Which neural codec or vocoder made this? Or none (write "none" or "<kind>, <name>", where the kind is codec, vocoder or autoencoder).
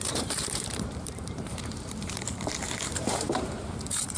vocoder, BigVGAN v2